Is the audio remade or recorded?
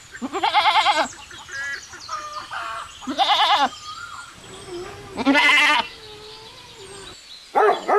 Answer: recorded